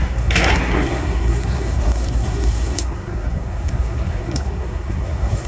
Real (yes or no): no